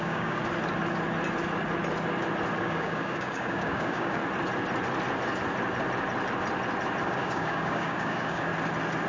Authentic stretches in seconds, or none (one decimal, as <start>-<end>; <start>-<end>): 0.4-2.6; 4.2-7.0; 8.5-9.1